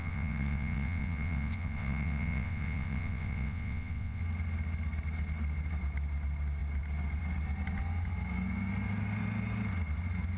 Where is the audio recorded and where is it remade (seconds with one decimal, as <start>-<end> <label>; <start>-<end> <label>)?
0.0-4.2 remade; 4.2-10.4 recorded